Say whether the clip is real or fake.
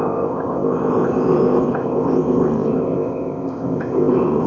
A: fake